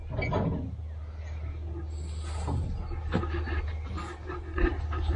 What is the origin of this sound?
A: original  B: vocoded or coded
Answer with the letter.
A